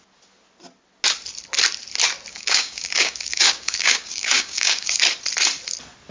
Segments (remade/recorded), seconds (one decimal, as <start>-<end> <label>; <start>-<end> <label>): 0.0-2.3 recorded; 2.3-5.0 remade; 5.0-6.1 recorded